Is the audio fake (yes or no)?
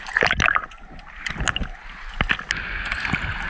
no